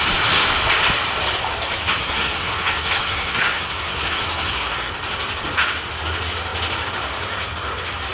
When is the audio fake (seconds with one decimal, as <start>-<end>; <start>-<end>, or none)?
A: 2.0-4.9